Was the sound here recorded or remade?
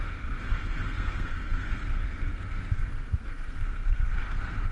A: remade